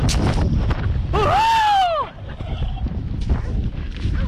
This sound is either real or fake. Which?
real